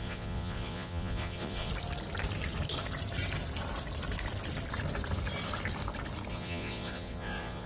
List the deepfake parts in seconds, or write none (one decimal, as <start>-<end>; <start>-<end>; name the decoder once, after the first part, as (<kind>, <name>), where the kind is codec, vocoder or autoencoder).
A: 0.0-1.7 (vocoder, Vocos); 6.3-7.7